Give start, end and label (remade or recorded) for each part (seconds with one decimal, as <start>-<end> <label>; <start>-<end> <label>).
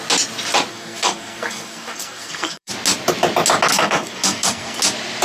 0.0-0.7 recorded; 0.7-2.7 remade; 2.7-3.7 recorded; 3.7-4.8 remade; 4.8-5.2 recorded